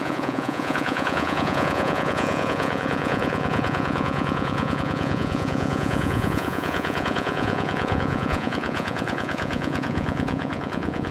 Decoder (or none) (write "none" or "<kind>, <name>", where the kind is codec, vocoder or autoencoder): vocoder, Vocos